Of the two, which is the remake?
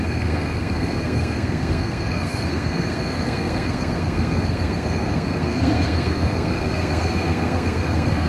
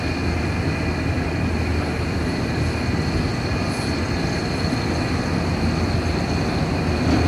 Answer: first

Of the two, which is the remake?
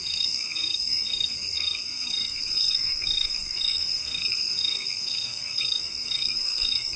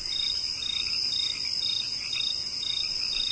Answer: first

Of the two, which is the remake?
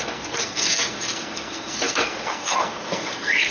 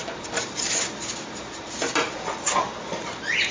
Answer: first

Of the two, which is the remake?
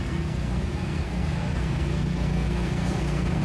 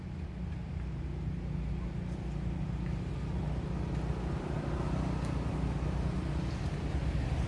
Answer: first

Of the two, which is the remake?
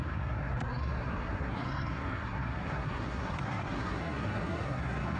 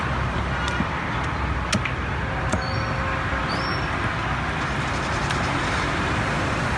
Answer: first